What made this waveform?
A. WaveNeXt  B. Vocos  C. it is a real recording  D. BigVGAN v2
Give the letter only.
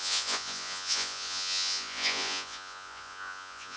B